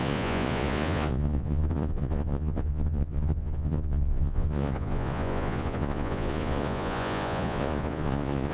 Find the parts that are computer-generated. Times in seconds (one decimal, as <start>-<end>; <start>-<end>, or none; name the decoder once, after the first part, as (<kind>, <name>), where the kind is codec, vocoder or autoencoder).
0.0-8.5 (vocoder, Vocos)